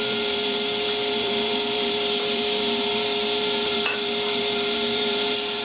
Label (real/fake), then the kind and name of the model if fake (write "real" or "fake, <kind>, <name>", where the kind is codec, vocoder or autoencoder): fake, vocoder, BigVGAN v2